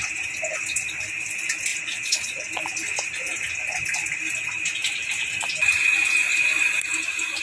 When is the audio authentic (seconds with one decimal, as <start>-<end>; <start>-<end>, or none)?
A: 0.0-1.7; 2.5-7.4